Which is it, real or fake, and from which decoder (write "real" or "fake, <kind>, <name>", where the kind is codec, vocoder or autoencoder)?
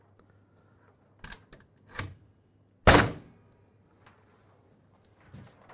real